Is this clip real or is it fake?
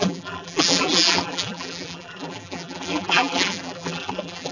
fake